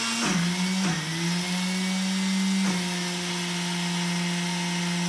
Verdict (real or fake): real